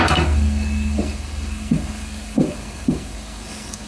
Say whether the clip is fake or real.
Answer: fake